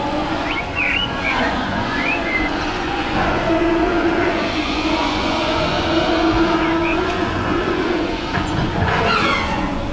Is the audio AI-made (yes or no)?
yes